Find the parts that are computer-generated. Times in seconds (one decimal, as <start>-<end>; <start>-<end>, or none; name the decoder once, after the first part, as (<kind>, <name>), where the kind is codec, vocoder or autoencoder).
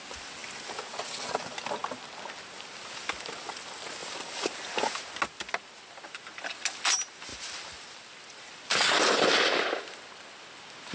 4.0-4.7 (vocoder, BigVGAN v2); 7.3-9.8